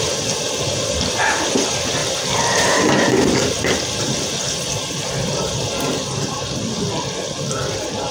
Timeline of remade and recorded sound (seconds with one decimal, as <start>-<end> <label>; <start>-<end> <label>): 0.0-8.1 recorded